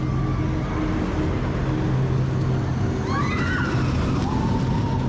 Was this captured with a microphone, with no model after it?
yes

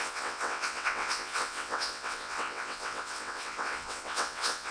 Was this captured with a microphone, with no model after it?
no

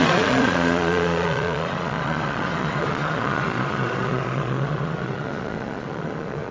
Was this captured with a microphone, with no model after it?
no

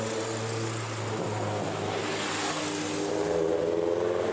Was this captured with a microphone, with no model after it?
yes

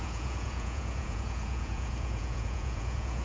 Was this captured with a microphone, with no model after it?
no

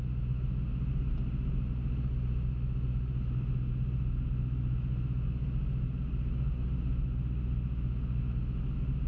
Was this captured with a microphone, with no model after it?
yes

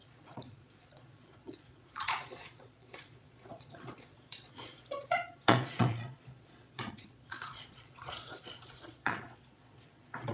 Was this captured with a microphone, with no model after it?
no